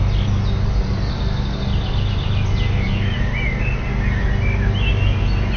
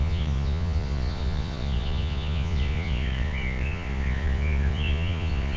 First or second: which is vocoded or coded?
second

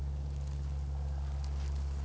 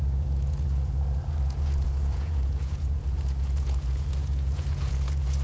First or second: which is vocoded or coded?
second